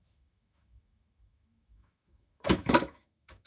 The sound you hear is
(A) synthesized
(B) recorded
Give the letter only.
A